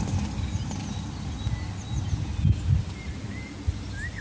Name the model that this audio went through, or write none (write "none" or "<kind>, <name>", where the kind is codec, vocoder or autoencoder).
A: none